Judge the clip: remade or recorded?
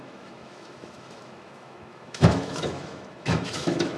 remade